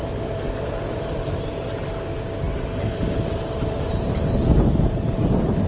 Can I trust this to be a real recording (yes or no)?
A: yes